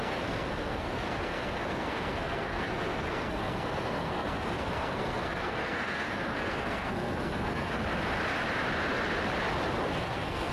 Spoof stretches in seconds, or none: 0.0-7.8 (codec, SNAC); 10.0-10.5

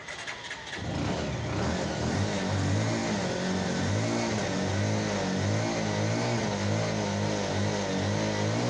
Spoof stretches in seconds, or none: none

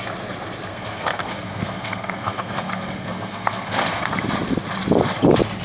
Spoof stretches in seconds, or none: 0.7-4.1 (codec, SNAC)

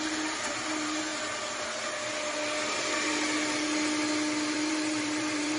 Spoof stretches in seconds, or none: 0.0-1.1 (vocoder, BigVGAN v2); 4.5-5.6

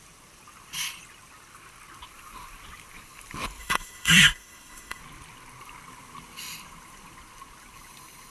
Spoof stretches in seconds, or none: 3.6-5.0 (codec, SNAC)

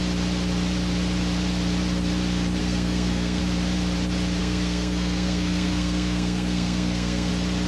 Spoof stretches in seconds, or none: 2.6-3.4 (codec, SNAC); 4.4-7.3

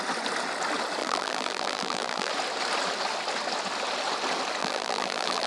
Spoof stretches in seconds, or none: 1.0-2.3 (vocoder, BigVGAN v2); 4.6-5.5

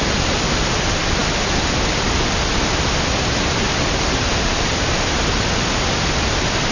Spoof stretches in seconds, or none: none